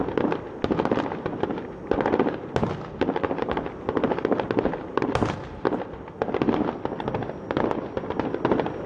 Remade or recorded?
recorded